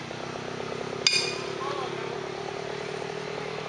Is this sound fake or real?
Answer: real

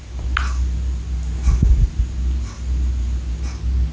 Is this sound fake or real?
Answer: real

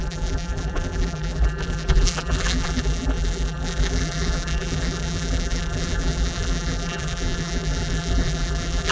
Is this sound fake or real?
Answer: fake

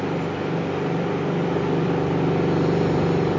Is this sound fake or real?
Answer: fake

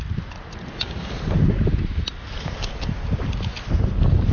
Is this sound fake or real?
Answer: real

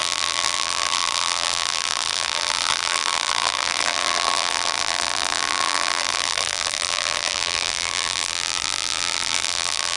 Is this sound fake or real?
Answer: fake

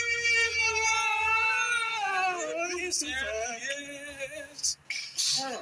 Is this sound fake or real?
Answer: real